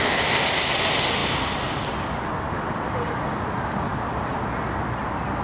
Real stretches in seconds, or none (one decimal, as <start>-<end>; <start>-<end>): 0.0-5.4